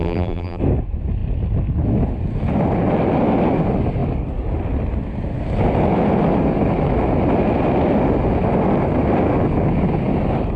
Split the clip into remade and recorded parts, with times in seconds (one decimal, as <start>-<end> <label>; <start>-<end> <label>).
0.0-0.6 remade; 0.6-10.6 recorded